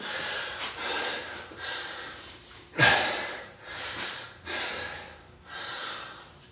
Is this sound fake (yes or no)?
yes